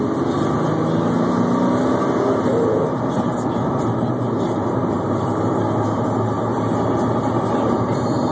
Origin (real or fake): real